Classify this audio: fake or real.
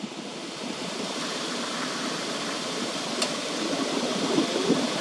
fake